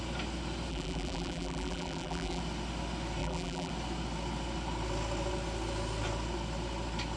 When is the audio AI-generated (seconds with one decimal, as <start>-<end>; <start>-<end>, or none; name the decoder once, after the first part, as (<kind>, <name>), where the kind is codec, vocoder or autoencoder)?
0.7-2.4 (vocoder, BigVGAN v2); 3.2-3.7